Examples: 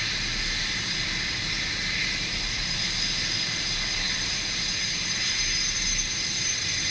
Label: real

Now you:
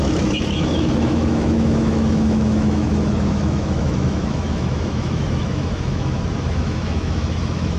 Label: fake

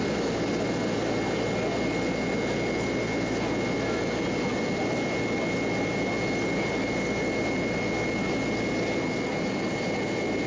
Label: real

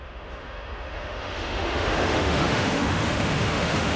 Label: fake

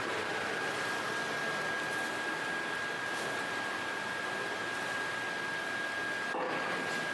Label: real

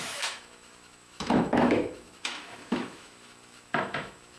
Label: fake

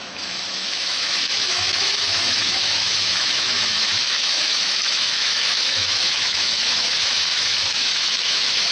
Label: fake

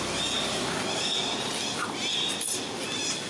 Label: real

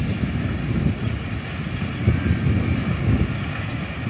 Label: real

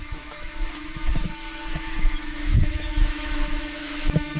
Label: fake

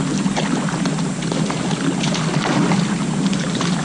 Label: real